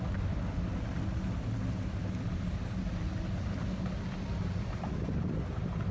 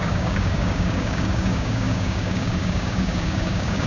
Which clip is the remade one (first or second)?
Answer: second